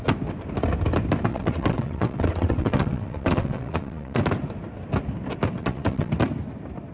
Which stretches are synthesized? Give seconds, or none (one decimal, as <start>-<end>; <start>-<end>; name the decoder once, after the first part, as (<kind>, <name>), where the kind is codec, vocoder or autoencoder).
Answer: 1.3-4.2 (vocoder, WaveNeXt); 5.6-6.1